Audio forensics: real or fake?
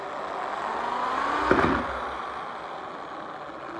real